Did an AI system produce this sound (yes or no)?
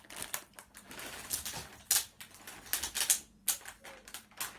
no